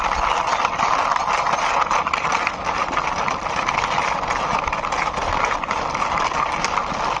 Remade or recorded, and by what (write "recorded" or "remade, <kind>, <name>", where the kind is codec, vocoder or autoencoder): recorded